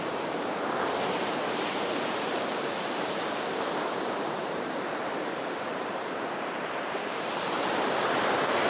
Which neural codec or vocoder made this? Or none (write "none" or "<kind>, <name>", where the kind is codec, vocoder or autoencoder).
vocoder, BigVGAN v2